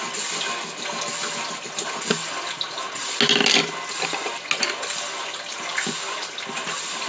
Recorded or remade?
recorded